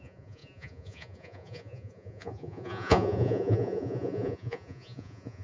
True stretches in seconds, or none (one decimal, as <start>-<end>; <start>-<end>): none